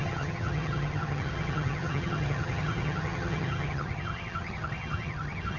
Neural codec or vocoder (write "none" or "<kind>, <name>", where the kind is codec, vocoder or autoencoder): vocoder, HiFi-GAN